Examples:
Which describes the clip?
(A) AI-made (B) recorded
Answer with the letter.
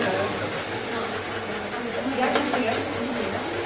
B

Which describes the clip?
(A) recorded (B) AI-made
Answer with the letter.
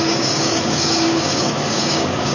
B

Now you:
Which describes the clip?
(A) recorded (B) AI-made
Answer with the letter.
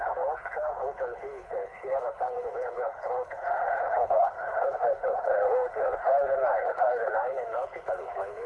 B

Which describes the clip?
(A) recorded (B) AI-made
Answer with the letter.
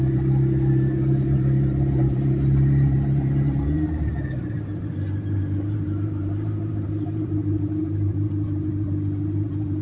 B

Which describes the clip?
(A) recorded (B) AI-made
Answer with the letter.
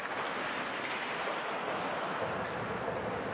A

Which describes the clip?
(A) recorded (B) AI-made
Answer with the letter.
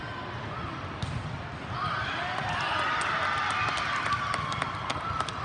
A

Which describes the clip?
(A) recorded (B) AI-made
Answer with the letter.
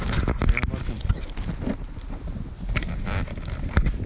A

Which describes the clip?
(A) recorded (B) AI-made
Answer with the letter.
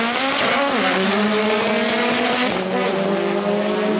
A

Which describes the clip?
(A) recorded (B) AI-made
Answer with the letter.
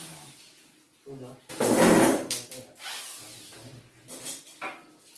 A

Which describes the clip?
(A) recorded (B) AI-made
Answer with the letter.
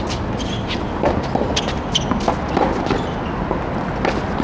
A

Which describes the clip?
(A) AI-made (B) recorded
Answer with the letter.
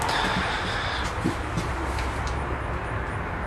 B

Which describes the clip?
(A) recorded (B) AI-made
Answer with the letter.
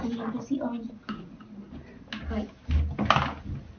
A